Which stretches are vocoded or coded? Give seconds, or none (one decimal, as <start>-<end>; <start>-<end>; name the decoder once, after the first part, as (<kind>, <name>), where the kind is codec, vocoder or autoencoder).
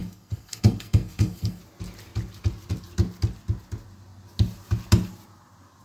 0.0-1.6 (codec, SNAC)